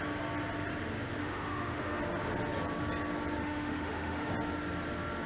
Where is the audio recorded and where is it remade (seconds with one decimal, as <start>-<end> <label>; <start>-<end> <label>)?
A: 0.0-1.2 recorded; 1.2-2.0 remade; 2.0-3.4 recorded; 3.4-4.3 remade; 4.3-5.3 recorded